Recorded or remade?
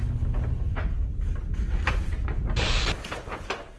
recorded